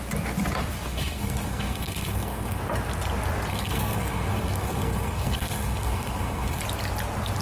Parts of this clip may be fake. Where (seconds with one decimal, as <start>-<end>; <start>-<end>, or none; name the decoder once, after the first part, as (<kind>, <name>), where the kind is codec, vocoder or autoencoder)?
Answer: 0.9-2.6 (codec, SNAC); 3.5-6.6